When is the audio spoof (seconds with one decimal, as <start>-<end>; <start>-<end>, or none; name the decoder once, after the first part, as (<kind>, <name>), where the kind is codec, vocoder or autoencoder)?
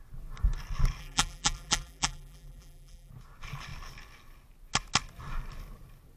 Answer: 1.0-3.1 (vocoder, BigVGAN v2)